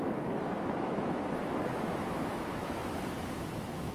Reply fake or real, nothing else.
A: fake